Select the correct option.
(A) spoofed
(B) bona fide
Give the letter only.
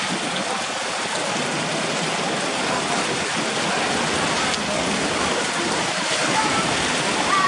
B